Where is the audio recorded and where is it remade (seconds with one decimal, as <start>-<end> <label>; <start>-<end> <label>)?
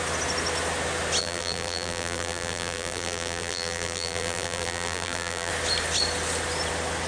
0.0-1.2 recorded; 1.2-5.5 remade; 5.5-7.1 recorded